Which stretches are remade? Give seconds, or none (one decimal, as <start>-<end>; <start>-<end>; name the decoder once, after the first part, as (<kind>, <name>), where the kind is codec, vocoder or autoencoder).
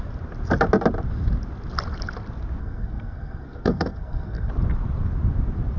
2.6-4.5 (codec, SNAC)